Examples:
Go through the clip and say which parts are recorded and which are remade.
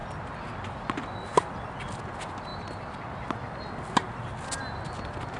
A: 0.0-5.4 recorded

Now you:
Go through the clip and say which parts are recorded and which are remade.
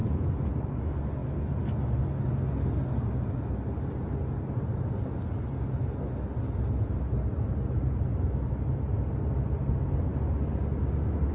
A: 0.0-0.5 remade; 0.5-11.3 recorded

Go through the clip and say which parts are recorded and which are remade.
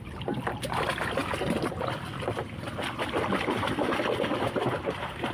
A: 0.0-5.3 recorded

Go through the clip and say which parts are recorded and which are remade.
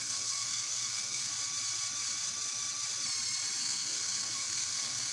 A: 0.0-1.3 remade; 1.3-3.6 recorded; 3.6-5.1 remade